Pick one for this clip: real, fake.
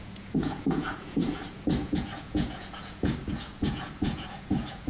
fake